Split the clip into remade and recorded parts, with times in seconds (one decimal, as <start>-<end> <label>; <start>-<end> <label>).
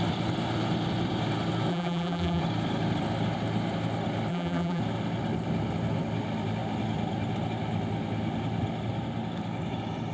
0.0-1.7 recorded; 1.7-2.4 remade; 2.4-4.3 recorded; 4.3-4.8 remade; 4.8-10.1 recorded